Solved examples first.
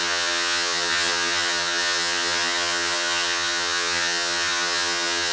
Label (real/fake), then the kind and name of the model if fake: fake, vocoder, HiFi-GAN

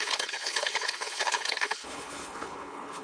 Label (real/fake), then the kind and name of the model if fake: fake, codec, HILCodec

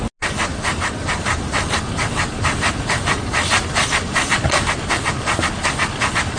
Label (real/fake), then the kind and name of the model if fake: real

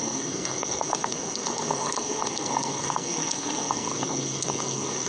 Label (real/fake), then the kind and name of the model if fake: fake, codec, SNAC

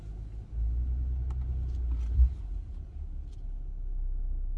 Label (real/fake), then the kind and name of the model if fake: real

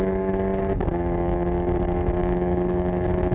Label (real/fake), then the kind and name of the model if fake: fake, codec, DAC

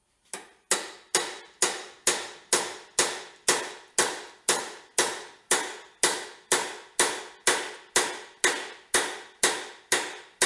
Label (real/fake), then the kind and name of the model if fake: real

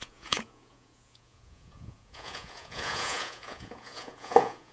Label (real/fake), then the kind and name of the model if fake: fake, vocoder, Vocos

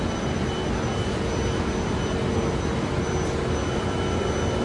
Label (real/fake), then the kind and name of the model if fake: real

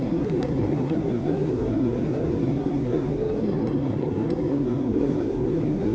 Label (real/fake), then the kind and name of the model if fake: fake, codec, SNAC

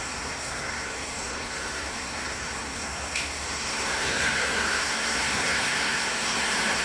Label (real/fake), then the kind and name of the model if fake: fake, codec, SNAC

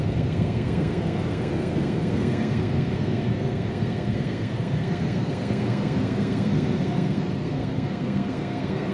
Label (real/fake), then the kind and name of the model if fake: fake, codec, SNAC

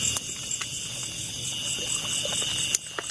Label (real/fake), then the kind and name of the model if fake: real